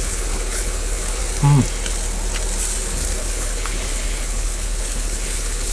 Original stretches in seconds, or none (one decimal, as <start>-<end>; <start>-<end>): 1.2-3.2